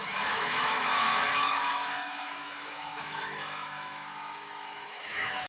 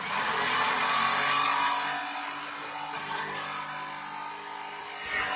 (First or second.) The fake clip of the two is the first